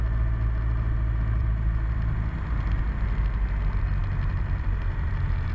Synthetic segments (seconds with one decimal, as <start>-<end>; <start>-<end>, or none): 1.4-2.7; 4.0-5.5